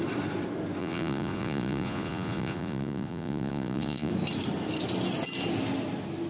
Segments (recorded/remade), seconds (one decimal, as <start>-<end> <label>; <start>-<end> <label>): 0.0-0.8 recorded; 0.8-4.1 remade; 4.1-6.3 recorded